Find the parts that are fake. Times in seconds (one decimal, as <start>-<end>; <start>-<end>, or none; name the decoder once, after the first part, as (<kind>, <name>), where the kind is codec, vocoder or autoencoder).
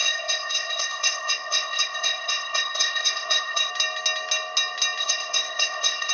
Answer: 0.0-3.7 (codec, ZipCodec); 5.0-6.1